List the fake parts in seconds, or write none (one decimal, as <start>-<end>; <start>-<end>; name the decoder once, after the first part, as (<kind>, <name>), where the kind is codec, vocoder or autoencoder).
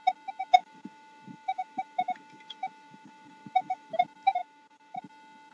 0.6-3.9 (autoencoder, DAC-VAE); 4.4-5.0